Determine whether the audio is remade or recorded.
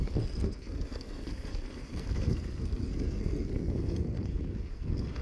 remade